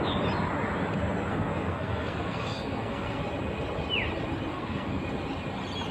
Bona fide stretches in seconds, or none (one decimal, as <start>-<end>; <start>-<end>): 0.0-1.3; 3.2-4.5; 5.0-5.9